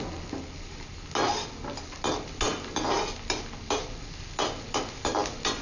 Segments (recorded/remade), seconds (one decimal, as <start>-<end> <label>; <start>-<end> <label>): 0.0-5.6 recorded